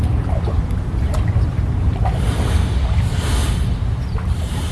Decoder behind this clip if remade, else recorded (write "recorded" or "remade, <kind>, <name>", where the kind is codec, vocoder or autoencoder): recorded